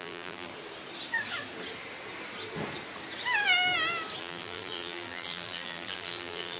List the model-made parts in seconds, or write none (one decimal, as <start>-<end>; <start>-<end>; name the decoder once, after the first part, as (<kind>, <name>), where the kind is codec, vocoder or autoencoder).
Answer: 0.0-0.5 (vocoder, BigVGAN v2); 4.2-6.6